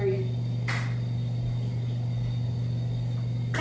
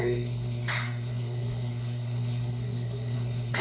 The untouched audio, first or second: first